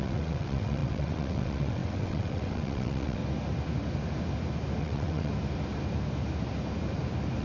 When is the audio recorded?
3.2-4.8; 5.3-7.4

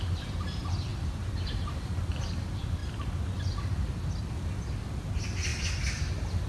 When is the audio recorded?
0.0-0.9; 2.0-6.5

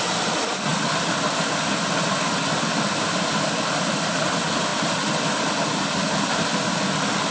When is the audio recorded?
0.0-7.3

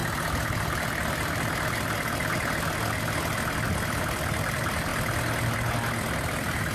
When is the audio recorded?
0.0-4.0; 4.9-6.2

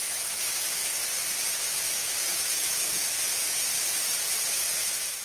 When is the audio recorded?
0.8-1.7; 3.7-4.5